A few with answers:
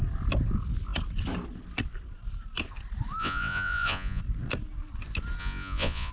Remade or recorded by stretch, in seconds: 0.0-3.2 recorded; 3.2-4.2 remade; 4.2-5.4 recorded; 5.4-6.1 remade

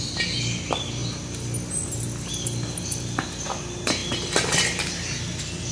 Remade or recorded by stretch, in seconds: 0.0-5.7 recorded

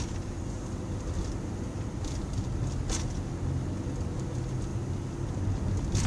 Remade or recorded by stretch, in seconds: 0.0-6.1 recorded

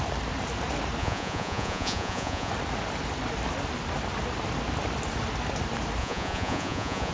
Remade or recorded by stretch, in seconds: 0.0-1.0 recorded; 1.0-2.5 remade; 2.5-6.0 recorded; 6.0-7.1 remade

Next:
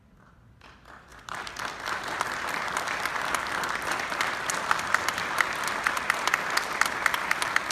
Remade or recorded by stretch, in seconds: 0.0-7.7 recorded

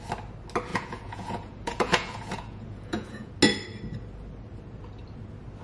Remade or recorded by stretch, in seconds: 0.0-0.7 recorded; 0.7-3.3 remade; 3.3-5.6 recorded